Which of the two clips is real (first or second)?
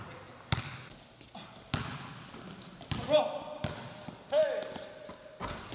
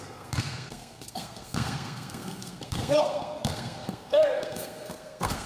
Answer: first